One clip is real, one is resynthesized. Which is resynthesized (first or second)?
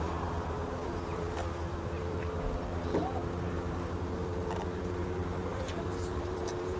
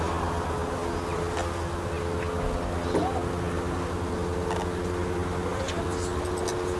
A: first